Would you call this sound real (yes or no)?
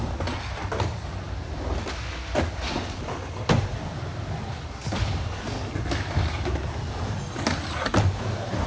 yes